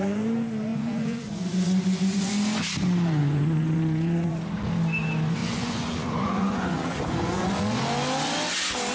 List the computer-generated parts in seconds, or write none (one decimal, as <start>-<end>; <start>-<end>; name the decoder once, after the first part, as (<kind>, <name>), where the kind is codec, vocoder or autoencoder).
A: 0.7-2.3 (vocoder, Vocos); 3.2-4.3; 5.4-7.5